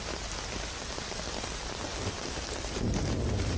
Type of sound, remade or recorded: recorded